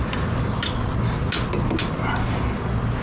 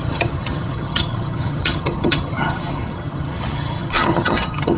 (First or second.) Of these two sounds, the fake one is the second